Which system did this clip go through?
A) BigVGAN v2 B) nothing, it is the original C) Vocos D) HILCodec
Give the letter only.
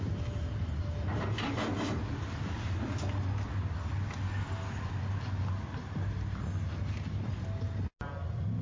B